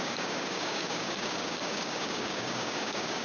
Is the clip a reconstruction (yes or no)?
yes